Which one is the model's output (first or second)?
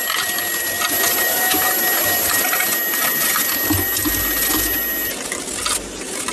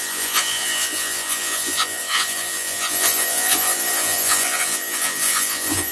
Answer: second